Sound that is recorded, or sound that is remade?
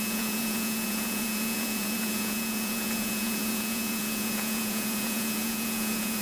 remade